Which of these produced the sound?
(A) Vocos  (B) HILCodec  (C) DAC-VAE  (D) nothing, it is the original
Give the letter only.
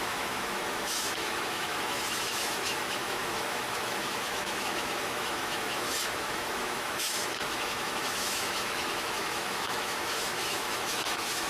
C